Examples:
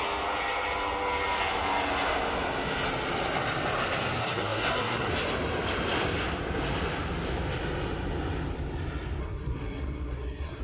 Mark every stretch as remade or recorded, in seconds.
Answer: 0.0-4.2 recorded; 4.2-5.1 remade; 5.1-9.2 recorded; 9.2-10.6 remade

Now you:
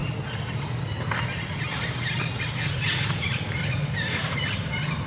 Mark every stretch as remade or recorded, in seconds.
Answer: 0.0-5.1 recorded

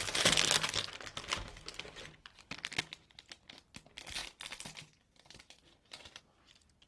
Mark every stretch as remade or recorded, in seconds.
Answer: 0.0-6.9 recorded

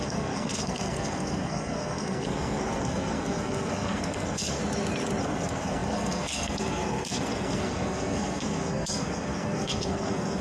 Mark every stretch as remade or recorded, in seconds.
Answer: 0.0-4.6 remade; 4.6-5.2 recorded; 5.2-10.4 remade

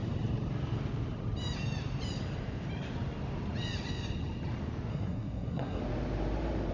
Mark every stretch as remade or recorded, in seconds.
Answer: 0.0-4.9 recorded; 4.9-5.8 remade; 5.8-6.7 recorded